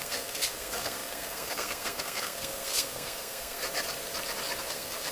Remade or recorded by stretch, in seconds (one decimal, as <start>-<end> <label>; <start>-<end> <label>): 0.0-3.6 remade; 3.6-4.6 recorded; 4.6-5.1 remade